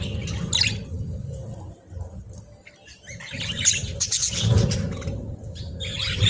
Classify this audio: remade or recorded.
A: recorded